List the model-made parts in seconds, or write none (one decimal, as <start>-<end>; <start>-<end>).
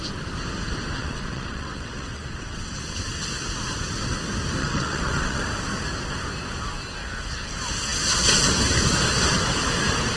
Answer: 1.0-2.7; 4.6-5.4